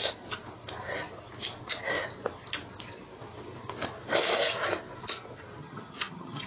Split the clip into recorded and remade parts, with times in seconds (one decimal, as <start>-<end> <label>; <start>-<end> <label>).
0.0-5.6 recorded; 5.6-6.5 remade